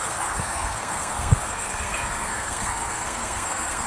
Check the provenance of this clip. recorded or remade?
remade